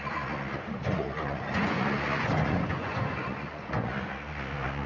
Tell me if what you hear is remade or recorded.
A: remade